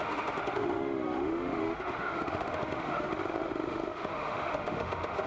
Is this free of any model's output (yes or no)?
no